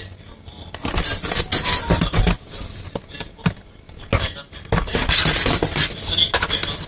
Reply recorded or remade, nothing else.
recorded